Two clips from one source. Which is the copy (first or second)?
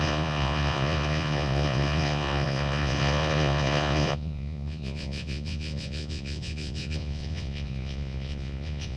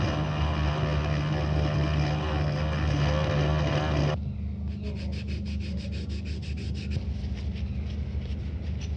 first